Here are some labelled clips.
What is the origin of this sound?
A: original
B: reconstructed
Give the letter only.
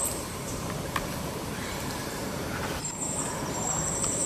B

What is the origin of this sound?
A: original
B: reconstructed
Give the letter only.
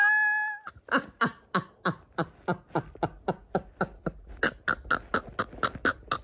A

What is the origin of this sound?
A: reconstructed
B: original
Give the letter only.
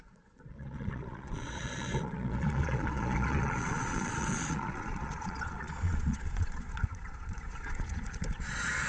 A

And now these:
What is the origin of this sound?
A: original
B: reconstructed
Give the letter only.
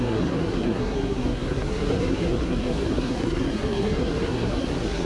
B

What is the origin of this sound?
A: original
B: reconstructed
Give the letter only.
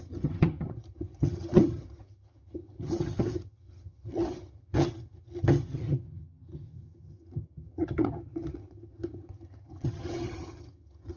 B